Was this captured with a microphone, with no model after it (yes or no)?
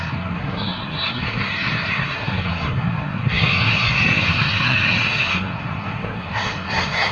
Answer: no